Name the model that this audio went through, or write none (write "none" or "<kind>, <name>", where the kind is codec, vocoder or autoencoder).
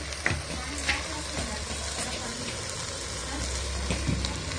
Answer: none